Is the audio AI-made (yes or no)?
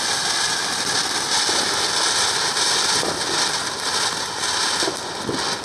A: no